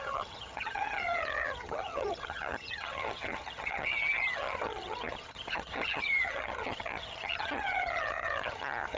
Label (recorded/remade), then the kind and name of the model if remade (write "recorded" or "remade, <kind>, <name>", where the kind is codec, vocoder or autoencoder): remade, vocoder, HiFi-GAN